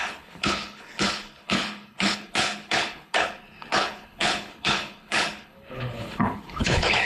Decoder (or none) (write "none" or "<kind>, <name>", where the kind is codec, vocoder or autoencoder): codec, HILCodec